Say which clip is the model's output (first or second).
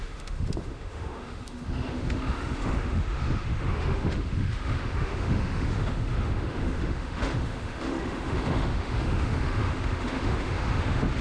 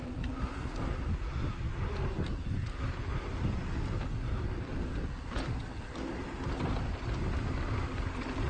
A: first